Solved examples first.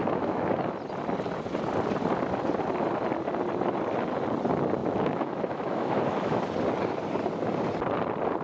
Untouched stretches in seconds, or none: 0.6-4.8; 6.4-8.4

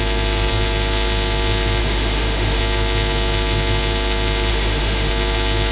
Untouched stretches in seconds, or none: 0.0-1.8; 2.6-4.5; 5.1-5.7

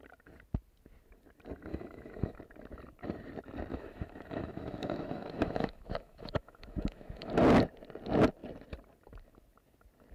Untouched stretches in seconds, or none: 0.0-1.7; 2.4-3.7; 7.3-10.1